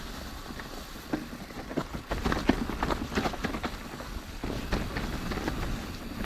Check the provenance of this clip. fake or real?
real